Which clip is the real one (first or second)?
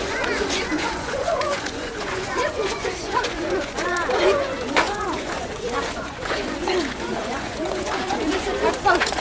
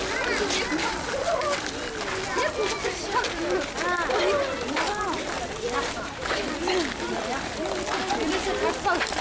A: second